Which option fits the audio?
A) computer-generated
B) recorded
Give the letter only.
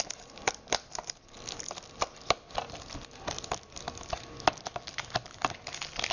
B